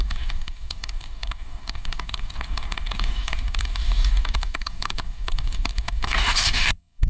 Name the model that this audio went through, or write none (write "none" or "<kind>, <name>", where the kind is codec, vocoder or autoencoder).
codec, DAC